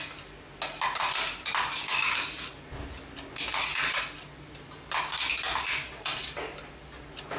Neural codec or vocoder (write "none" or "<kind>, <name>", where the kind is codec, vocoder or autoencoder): none